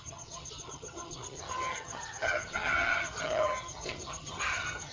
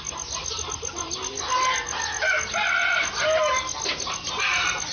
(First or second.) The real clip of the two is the second